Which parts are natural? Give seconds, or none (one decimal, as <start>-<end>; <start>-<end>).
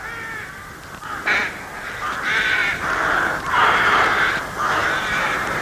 0.0-1.4; 1.9-2.6; 4.3-4.8